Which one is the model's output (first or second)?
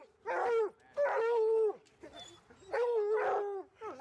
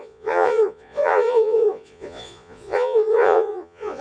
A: second